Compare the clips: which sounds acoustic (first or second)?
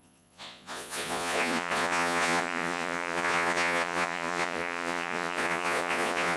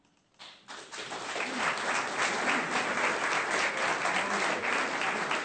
second